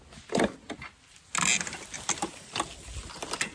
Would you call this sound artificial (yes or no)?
no